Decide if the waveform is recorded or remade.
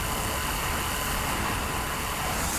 recorded